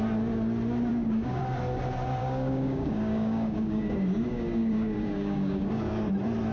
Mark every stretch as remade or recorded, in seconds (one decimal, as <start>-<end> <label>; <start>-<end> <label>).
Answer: 0.0-0.9 recorded; 0.9-1.4 remade; 1.4-2.2 recorded; 2.2-6.1 remade; 6.1-6.5 recorded